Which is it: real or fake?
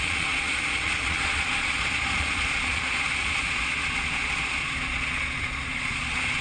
fake